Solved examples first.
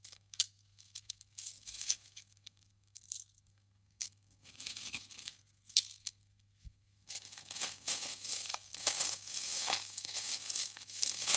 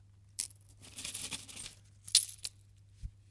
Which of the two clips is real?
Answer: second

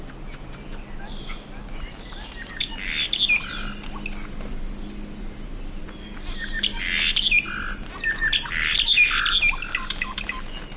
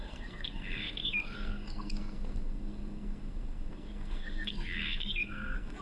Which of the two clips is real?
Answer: first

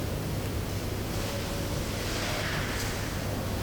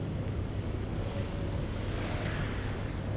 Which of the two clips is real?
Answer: first